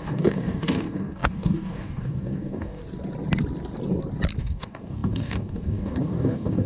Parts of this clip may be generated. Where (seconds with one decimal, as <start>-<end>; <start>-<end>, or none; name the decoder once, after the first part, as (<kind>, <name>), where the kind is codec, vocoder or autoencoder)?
0.0-2.8 (codec, DAC); 4.4-6.7